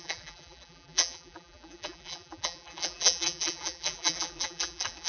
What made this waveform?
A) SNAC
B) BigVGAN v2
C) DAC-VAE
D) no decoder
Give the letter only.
B